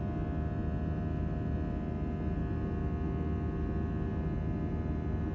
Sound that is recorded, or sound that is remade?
recorded